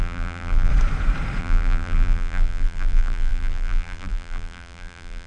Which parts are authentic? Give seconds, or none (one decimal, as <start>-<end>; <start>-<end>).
0.7-1.4